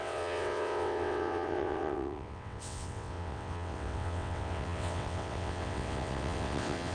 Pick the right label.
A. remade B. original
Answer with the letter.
A